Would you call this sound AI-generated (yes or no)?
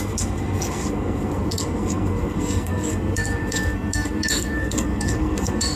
yes